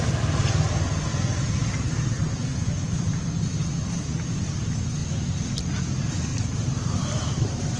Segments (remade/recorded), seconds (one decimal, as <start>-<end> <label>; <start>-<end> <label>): 0.0-6.3 recorded; 6.3-7.8 remade